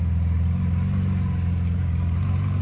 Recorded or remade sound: recorded